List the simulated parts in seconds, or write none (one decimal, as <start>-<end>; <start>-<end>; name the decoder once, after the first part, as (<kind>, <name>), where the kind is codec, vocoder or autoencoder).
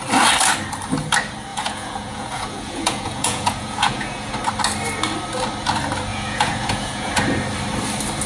1.5-4.3 (vocoder, Vocos); 6.1-7.1